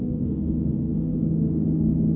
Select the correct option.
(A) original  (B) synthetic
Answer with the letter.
B